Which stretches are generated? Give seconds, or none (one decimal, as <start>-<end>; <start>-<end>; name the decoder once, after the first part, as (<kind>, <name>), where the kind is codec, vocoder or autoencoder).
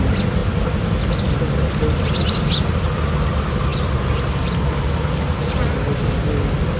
none